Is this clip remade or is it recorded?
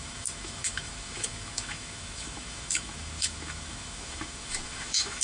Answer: remade